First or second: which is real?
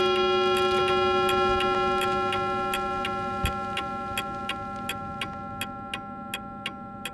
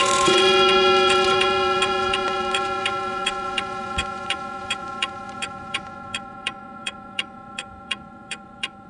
first